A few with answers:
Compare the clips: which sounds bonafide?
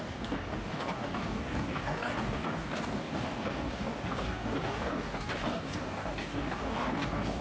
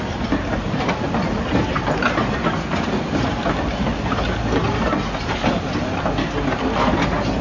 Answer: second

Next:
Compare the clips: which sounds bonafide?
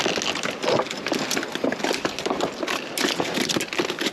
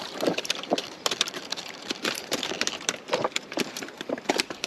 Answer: first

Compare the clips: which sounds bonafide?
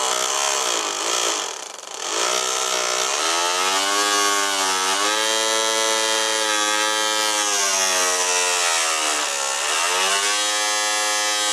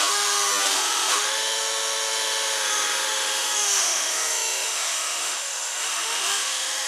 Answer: first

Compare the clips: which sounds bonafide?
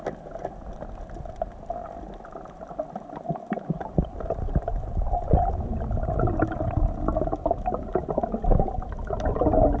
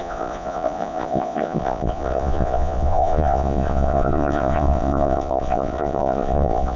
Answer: first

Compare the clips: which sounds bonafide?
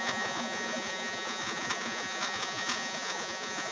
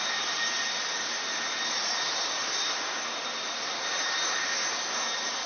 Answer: second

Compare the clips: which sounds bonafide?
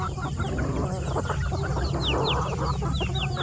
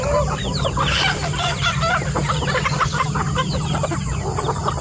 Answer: first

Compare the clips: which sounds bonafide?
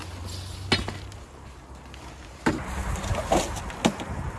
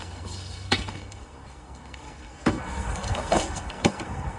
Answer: first